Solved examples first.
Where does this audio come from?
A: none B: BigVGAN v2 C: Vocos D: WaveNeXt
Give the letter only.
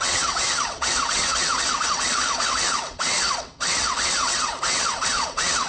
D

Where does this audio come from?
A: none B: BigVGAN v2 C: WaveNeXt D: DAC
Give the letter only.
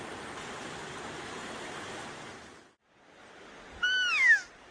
A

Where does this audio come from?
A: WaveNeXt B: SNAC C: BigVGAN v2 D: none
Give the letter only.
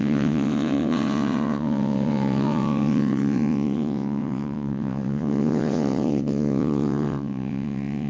A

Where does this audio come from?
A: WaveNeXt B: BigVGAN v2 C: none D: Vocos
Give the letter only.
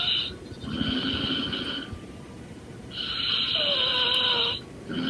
C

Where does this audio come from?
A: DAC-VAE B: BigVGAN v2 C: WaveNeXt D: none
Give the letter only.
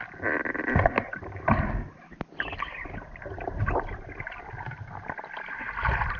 D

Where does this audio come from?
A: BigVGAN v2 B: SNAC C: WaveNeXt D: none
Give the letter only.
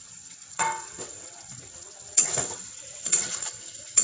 C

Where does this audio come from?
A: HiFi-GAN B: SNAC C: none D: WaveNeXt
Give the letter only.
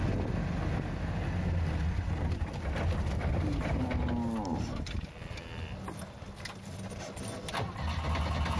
C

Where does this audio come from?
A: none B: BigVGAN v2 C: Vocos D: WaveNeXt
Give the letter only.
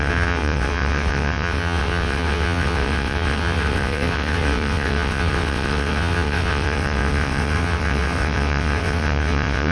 D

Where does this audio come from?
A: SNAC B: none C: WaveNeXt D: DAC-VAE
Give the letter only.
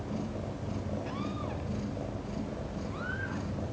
B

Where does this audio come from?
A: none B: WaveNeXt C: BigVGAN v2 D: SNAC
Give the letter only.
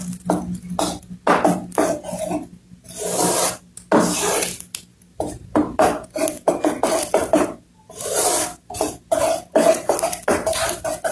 A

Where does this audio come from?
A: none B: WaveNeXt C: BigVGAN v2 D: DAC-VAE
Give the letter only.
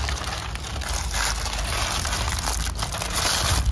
A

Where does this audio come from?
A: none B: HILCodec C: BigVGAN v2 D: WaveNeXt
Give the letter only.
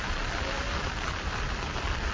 A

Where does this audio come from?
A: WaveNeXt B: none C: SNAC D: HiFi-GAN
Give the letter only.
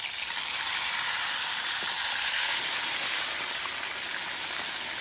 B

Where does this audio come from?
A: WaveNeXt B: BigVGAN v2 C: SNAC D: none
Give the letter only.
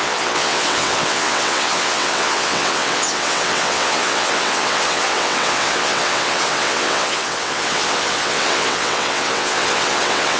A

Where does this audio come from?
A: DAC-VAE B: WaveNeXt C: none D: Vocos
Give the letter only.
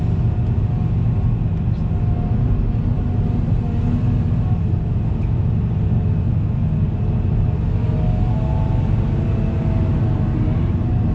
C